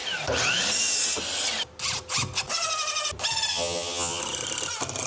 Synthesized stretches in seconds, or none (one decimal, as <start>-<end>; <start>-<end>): 3.5-4.2